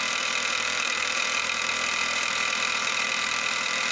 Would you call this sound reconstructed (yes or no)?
yes